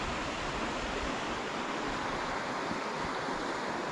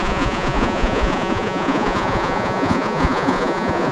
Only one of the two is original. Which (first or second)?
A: first